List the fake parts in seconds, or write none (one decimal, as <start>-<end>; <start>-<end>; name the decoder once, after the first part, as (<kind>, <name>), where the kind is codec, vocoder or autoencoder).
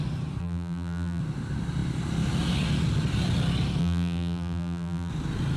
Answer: 0.4-1.2 (vocoder, BigVGAN v2); 3.8-5.1